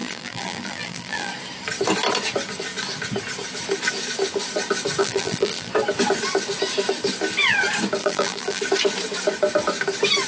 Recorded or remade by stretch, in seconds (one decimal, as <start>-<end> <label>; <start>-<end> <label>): 0.0-1.3 remade; 1.3-5.0 recorded; 5.0-5.7 remade; 5.7-8.0 recorded; 8.0-8.6 remade; 8.6-10.3 recorded